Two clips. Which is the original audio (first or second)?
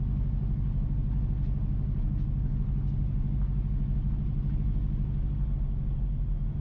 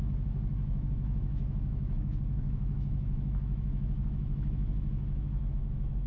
first